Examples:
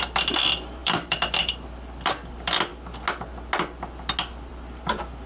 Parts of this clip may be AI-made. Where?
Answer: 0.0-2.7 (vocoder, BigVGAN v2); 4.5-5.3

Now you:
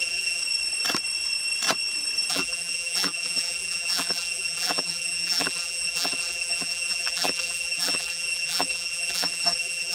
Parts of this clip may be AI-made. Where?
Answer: 0.0-0.4 (vocoder, BigVGAN v2); 2.3-9.9

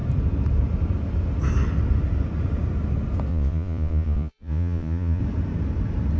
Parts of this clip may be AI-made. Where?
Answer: 3.3-5.2 (vocoder, Vocos)

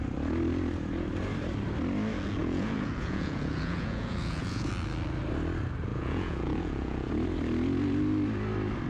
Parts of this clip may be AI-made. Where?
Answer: 2.4-4.7 (vocoder, Vocos); 5.9-7.1

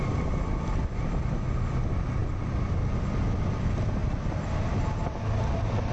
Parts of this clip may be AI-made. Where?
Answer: none